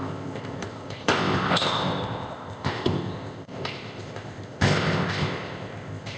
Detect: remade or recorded remade